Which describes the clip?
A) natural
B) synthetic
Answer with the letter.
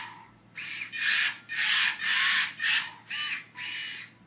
A